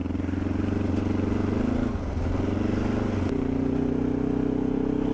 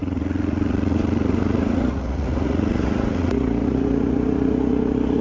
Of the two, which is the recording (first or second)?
first